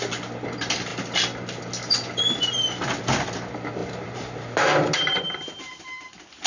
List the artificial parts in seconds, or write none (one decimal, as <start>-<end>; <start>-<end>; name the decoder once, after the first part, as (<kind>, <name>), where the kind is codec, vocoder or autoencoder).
3.8-5.6 (vocoder, BigVGAN v2)